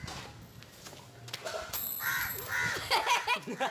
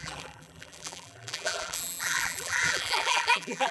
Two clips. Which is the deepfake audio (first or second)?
second